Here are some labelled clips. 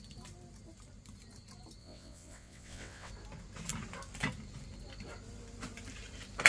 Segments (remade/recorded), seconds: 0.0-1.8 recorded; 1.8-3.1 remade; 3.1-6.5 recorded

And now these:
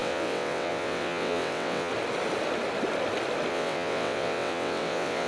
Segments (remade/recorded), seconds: 0.0-1.9 remade; 1.9-3.5 recorded; 3.5-5.3 remade

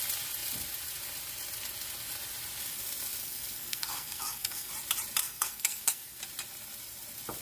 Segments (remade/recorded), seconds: 0.0-3.2 recorded; 3.2-4.7 remade; 4.7-5.2 recorded; 5.2-6.2 remade; 6.2-7.4 recorded

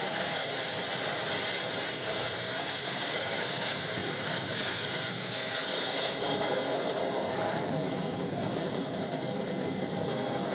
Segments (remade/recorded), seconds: 0.0-0.5 remade; 0.5-1.9 recorded; 1.9-10.5 remade

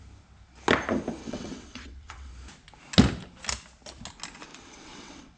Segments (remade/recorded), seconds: 0.0-1.2 recorded; 1.2-2.3 remade; 2.3-4.5 recorded; 4.5-5.4 remade

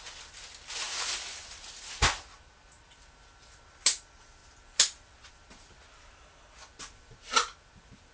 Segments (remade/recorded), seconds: 0.0-8.1 recorded